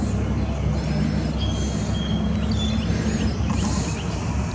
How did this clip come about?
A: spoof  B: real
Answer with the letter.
B